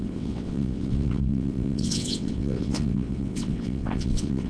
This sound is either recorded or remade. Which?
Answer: remade